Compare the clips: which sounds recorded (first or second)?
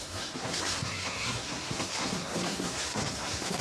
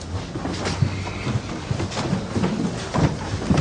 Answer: second